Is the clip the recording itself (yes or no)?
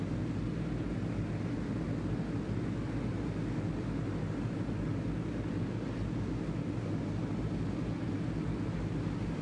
yes